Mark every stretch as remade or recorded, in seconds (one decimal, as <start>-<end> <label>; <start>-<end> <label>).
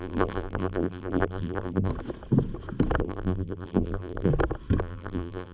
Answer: 0.0-1.9 remade; 1.9-3.0 recorded; 3.0-4.3 remade; 4.3-4.8 recorded; 4.8-5.5 remade